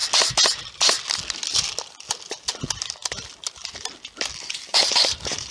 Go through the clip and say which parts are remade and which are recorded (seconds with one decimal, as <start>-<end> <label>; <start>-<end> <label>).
0.0-4.7 recorded; 4.7-5.5 remade